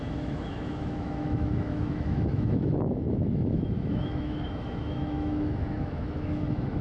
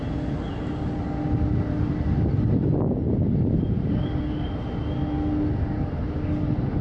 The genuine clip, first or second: second